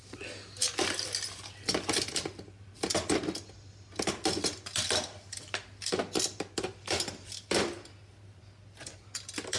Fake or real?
real